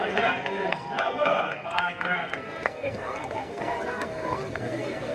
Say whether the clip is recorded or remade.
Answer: remade